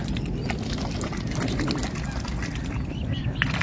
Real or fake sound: real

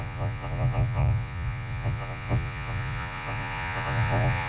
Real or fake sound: fake